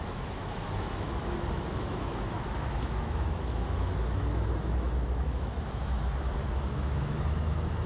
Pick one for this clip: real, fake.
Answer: fake